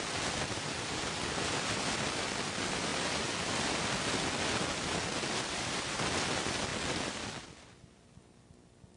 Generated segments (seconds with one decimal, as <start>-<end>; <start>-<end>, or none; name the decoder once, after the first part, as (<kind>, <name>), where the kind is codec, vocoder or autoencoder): none